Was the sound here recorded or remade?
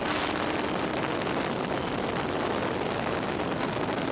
recorded